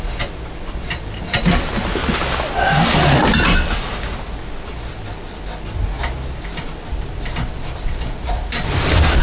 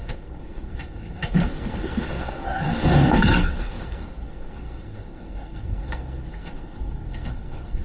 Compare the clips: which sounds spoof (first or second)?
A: second